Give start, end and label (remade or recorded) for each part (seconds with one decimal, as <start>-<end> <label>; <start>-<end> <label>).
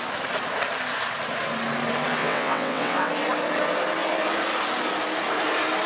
0.0-2.2 recorded; 2.2-3.1 remade; 3.1-5.9 recorded